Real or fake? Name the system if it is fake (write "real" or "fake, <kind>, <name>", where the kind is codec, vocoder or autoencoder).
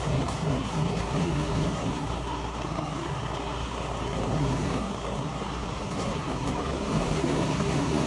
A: fake, codec, SNAC